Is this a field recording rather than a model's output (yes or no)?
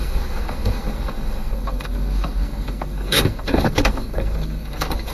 no